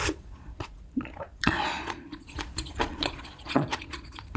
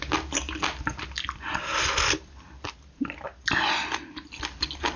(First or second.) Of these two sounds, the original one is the second